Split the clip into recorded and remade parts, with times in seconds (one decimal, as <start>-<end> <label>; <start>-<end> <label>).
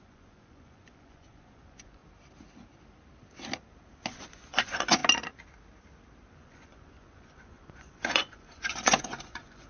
0.0-2.0 remade; 2.0-4.1 recorded; 4.1-5.0 remade; 5.0-6.3 recorded; 6.3-9.7 remade